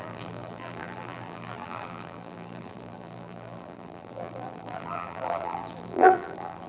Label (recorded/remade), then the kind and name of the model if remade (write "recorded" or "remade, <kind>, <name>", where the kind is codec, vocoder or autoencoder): remade, vocoder, BigVGAN v2